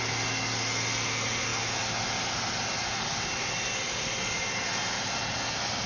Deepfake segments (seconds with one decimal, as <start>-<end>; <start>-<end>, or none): none